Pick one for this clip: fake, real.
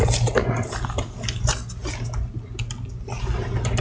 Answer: real